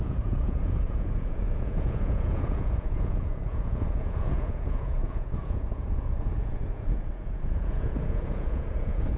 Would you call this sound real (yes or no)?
no